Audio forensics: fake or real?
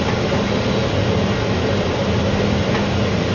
real